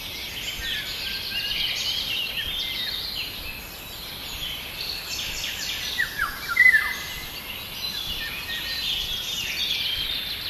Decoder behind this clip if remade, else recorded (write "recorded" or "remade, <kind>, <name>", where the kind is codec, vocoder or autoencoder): recorded